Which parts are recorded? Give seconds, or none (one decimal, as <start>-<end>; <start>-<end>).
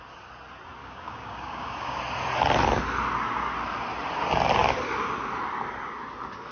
0.0-0.8; 2.0-6.5